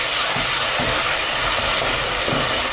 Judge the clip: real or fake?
real